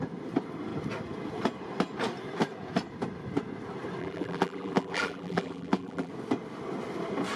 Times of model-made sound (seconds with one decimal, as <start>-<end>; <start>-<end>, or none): 4.0-6.1